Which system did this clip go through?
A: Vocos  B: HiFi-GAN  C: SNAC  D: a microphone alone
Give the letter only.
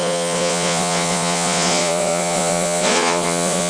A